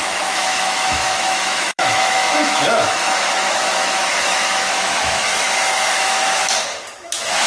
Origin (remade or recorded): remade